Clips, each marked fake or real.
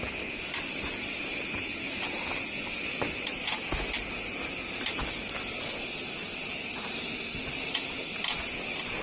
real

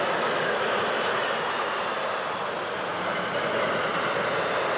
real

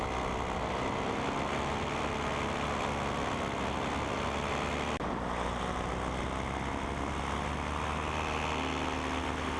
real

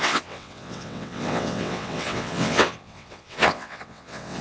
fake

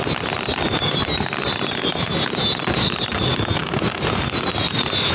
real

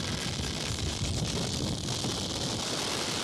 real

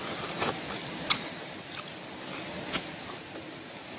real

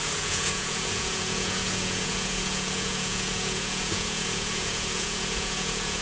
fake